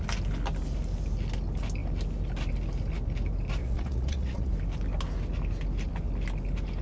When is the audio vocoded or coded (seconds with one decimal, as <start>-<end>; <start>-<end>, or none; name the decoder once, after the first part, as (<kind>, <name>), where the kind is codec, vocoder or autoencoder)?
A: 3.6-4.5 (vocoder, Vocos)